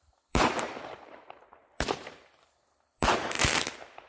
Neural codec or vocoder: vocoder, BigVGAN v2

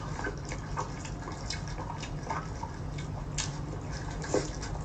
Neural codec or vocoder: none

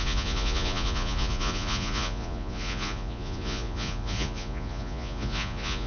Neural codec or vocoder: vocoder, Vocos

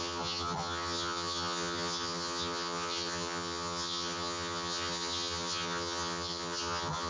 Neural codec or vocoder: vocoder, HiFi-GAN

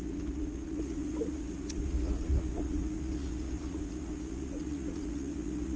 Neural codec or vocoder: vocoder, Vocos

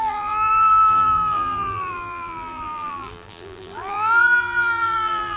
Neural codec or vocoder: vocoder, BigVGAN v2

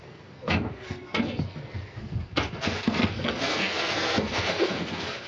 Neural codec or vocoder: codec, SNAC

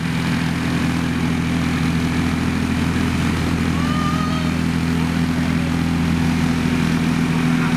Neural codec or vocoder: none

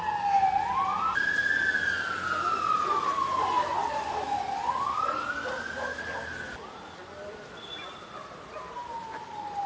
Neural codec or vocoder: none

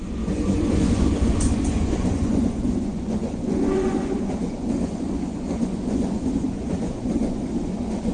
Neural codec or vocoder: vocoder, Vocos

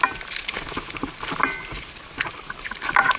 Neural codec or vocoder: none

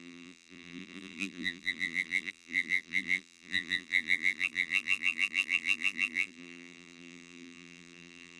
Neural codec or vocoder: vocoder, BigVGAN v2